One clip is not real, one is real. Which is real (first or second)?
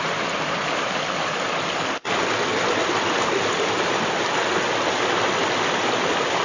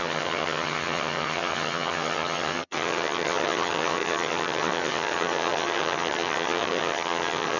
first